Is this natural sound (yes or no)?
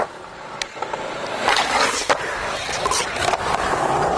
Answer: yes